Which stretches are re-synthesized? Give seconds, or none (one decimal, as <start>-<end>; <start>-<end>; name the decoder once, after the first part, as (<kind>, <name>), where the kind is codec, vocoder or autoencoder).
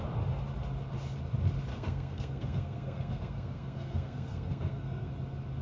1.7-5.1 (codec, SNAC)